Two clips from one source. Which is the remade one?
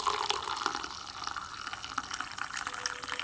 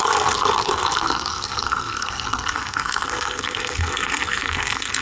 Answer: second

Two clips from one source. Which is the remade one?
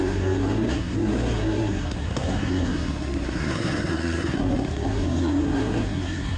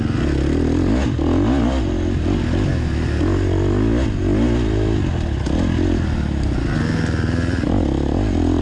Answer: first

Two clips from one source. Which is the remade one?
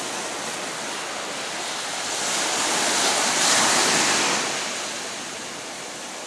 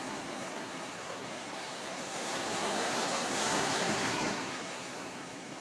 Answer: second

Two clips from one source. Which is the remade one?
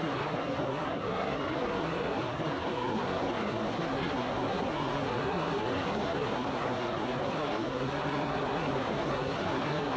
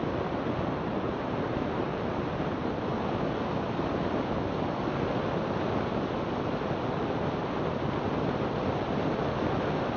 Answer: first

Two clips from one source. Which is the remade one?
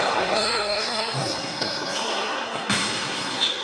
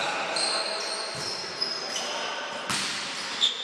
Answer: first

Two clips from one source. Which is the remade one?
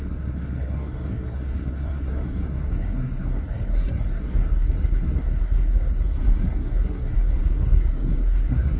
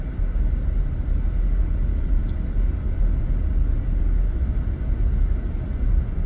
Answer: first